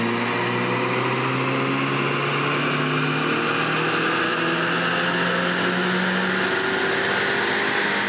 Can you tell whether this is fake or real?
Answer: real